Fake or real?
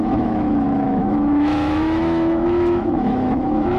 fake